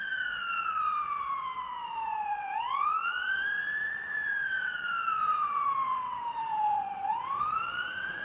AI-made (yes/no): yes